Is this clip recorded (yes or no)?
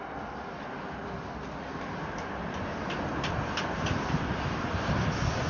yes